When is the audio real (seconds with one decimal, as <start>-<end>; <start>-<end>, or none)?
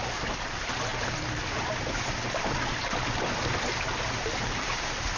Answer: 0.0-5.2